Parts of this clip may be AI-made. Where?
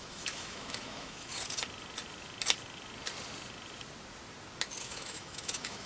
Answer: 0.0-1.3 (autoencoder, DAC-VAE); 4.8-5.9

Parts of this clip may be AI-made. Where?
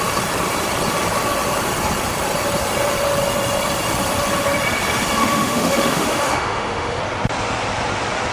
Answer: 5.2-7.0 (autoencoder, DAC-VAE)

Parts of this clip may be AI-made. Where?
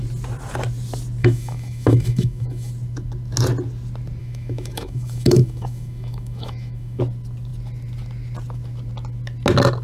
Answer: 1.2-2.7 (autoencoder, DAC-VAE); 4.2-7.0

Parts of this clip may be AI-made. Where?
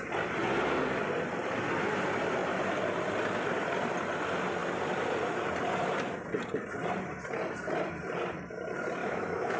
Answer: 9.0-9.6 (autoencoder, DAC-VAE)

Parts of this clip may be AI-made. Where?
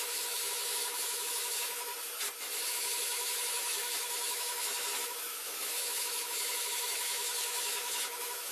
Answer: 0.0-1.9 (autoencoder, DAC-VAE); 2.7-8.5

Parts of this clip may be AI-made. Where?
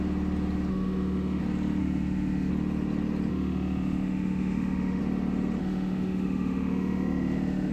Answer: 0.7-1.4 (autoencoder, DAC-VAE); 1.8-2.5; 3.3-5.0; 5.6-7.7